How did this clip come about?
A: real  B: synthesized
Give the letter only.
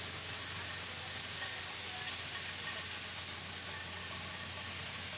A